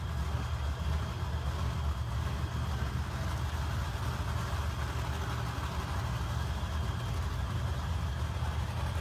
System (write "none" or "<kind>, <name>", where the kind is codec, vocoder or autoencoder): none